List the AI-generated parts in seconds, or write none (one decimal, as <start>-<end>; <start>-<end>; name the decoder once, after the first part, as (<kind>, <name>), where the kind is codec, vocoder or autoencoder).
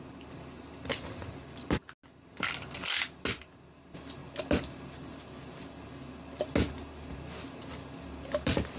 none